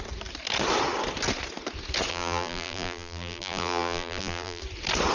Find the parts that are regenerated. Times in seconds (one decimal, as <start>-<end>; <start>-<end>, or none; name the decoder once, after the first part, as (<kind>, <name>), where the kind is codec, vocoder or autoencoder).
2.1-4.6 (vocoder, BigVGAN v2)